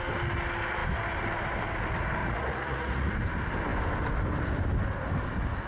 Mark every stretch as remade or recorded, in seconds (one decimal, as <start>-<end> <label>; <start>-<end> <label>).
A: 0.0-2.2 recorded; 2.2-3.1 remade; 3.1-5.7 recorded